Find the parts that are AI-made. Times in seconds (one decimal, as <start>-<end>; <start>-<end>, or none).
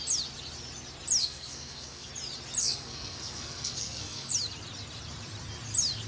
1.2-2.1; 2.6-4.3